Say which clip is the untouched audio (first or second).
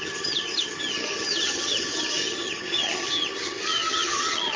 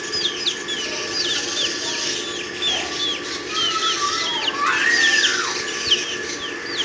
second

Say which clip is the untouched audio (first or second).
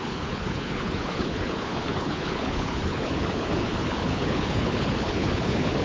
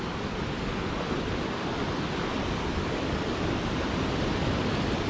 second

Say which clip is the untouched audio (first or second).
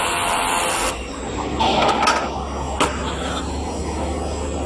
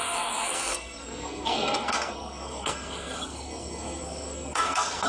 first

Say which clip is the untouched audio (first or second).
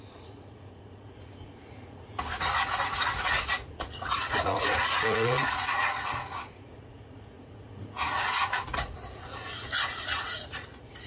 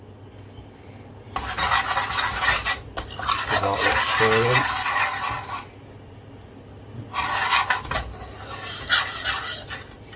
second